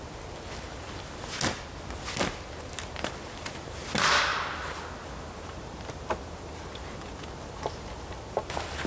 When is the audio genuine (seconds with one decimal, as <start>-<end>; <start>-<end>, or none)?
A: 0.0-8.9